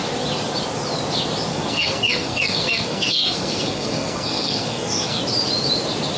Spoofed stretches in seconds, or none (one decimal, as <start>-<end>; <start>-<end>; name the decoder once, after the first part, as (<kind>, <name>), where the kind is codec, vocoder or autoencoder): 1.5-5.2 (codec, SNAC)